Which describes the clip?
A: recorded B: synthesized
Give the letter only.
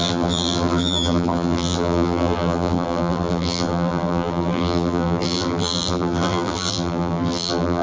B